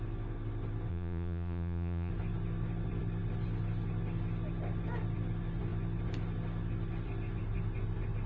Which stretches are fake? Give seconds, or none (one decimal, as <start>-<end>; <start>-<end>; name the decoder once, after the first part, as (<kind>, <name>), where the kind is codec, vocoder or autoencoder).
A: 0.9-2.1 (vocoder, Vocos)